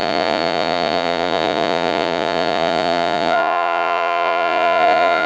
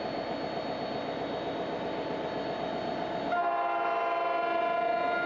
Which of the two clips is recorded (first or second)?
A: second